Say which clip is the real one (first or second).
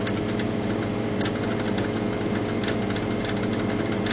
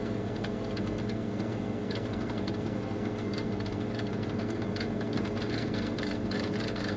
first